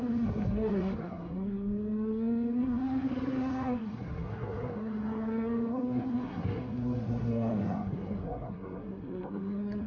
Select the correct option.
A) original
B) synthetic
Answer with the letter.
B